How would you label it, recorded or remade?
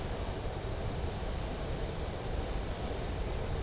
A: remade